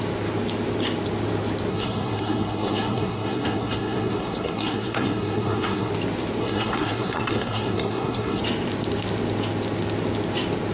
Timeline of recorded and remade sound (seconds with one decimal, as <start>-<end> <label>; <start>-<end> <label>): 0.0-1.7 recorded; 1.7-5.9 remade; 5.9-6.4 recorded; 6.4-8.4 remade; 8.4-10.7 recorded